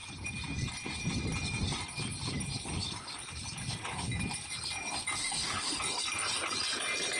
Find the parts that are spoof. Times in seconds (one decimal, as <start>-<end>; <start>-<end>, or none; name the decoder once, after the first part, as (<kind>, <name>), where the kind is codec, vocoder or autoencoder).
5.2-5.8 (autoencoder, DAC-VAE)